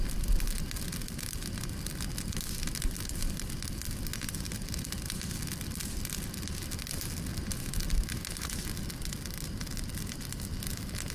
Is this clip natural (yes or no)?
yes